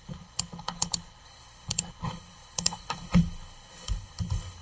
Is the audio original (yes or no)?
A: no